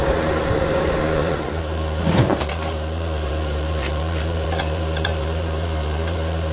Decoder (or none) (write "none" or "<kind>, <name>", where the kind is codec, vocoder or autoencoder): vocoder, Vocos